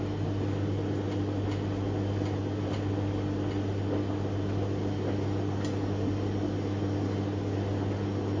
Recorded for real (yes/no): yes